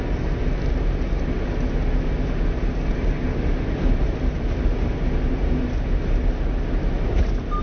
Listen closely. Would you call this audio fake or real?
real